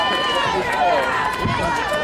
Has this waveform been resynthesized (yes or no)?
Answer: yes